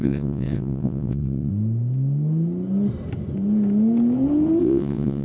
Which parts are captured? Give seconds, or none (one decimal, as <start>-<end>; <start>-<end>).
1.5-4.6

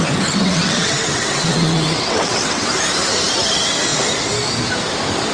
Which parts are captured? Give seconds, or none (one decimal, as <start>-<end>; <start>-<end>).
0.0-0.4; 2.7-5.3

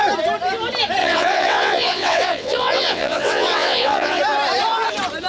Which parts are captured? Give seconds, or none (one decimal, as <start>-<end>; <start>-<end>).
0.0-1.0; 4.2-5.3

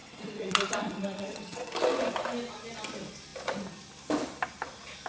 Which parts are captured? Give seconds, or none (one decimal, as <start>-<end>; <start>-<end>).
1.7-5.1